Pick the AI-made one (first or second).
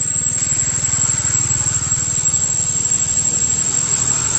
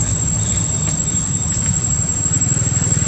second